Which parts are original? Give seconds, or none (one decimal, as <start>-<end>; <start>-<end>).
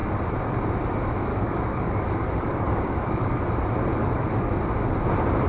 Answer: 0.0-1.3; 3.4-3.9; 4.5-5.5